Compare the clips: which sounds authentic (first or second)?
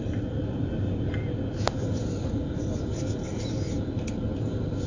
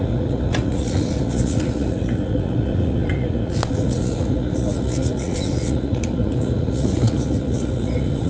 first